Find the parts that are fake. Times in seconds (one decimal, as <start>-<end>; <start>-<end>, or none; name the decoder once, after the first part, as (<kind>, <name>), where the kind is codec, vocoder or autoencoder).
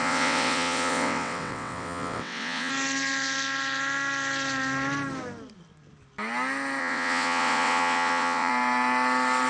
0.0-2.7 (vocoder, WaveNeXt); 6.8-8.5